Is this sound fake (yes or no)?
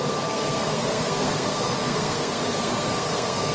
yes